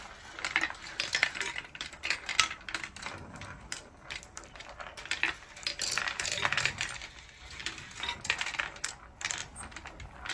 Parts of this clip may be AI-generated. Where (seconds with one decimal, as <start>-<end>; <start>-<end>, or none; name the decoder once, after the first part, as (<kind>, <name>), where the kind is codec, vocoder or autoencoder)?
0.0-7.6 (vocoder, BigVGAN v2); 8.6-9.4